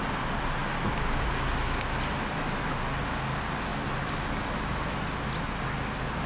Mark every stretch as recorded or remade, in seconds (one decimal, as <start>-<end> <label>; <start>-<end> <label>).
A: 0.0-6.3 recorded